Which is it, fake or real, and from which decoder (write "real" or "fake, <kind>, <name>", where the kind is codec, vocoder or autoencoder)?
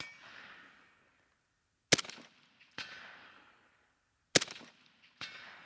real